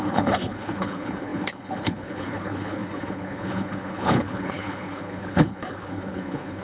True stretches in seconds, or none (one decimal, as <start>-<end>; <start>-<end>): none

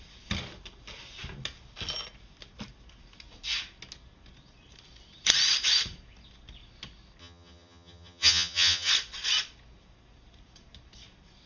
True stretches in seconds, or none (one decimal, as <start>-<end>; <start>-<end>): 0.0-7.2; 8.9-11.5

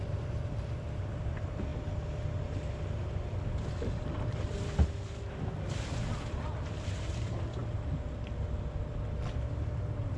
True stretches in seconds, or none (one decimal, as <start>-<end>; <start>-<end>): 1.7-3.0; 7.6-8.9

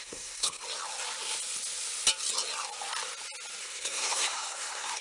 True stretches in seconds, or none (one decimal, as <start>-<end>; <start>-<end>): 0.6-3.6